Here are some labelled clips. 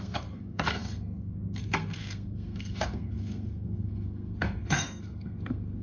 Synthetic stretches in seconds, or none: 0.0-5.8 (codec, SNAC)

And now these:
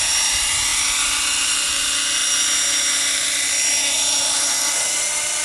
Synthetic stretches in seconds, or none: none

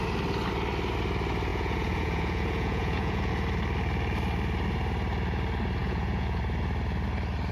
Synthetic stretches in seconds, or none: 1.5-3.3 (vocoder, Vocos); 5.8-6.4

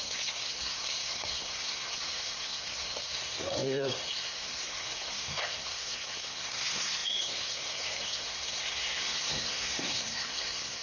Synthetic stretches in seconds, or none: 0.0-10.8 (codec, SNAC)